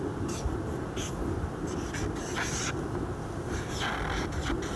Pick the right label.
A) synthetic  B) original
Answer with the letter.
B